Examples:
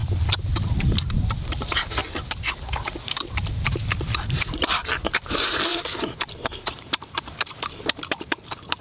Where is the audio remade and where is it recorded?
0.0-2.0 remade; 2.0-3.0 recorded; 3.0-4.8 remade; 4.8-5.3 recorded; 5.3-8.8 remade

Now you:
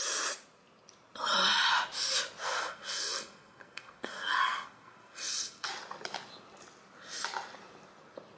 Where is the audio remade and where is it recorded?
0.0-2.4 recorded; 2.4-5.7 remade; 5.7-8.4 recorded

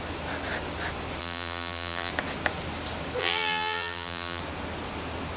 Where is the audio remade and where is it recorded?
0.0-1.2 recorded; 1.2-2.1 remade; 2.1-3.2 recorded; 3.2-4.4 remade; 4.4-5.4 recorded

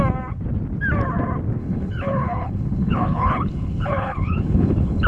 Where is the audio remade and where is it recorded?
0.0-1.6 recorded; 1.6-5.1 remade

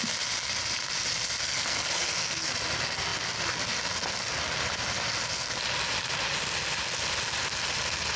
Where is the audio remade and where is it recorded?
0.0-1.4 recorded; 1.4-2.5 remade; 2.5-8.2 recorded

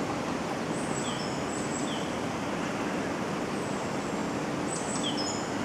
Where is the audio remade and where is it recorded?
0.0-5.6 recorded

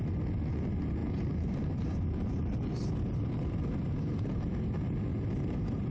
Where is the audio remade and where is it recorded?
0.0-1.0 recorded; 1.0-4.5 remade; 4.5-5.1 recorded; 5.1-5.9 remade

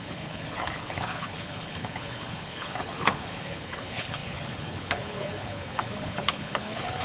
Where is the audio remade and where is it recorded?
0.0-7.0 remade